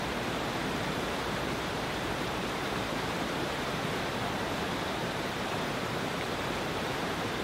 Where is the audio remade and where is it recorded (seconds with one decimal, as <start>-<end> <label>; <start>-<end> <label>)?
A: 0.0-3.7 remade; 3.7-4.4 recorded; 4.4-7.4 remade